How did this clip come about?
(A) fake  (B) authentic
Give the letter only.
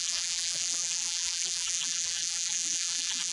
A